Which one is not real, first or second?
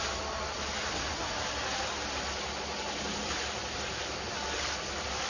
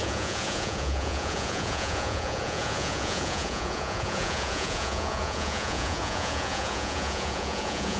second